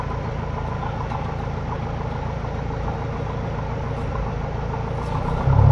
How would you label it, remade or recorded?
recorded